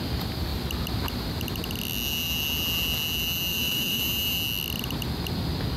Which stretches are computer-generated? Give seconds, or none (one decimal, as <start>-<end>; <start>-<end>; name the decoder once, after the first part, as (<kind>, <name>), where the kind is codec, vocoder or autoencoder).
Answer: 3.5-4.0 (autoencoder, DAC-VAE)